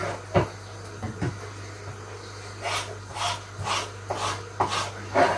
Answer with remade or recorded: recorded